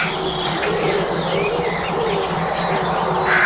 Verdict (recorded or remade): recorded